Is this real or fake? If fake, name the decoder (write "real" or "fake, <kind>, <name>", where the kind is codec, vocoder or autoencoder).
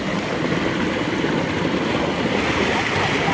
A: real